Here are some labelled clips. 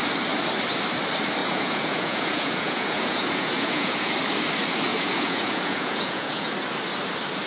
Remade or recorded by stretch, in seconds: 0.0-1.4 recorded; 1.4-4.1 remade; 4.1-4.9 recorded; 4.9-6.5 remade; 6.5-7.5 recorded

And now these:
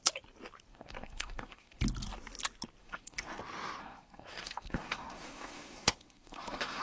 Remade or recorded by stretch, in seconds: 0.0-0.7 recorded; 0.7-1.8 remade; 1.8-2.8 recorded; 2.8-3.4 remade; 3.4-3.8 recorded; 3.8-6.8 remade

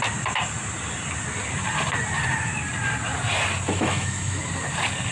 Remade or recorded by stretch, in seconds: 0.0-3.7 recorded; 3.7-4.4 remade; 4.4-5.1 recorded